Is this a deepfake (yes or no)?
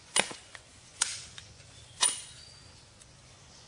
yes